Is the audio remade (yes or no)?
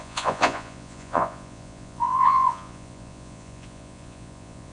yes